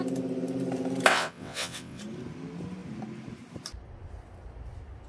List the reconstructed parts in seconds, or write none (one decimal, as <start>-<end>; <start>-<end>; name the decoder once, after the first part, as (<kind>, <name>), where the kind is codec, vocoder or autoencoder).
1.1-2.0 (vocoder, WaveNeXt)